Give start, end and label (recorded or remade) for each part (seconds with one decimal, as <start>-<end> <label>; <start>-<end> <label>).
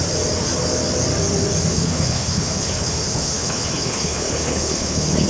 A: 0.0-1.7 recorded; 1.7-5.3 remade